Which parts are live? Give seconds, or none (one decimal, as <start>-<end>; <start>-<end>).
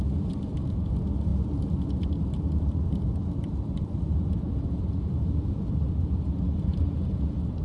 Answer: none